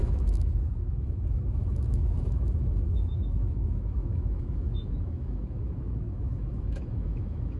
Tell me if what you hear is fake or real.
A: fake